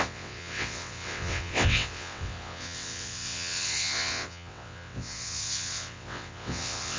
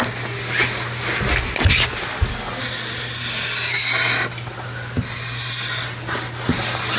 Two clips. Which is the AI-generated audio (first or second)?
first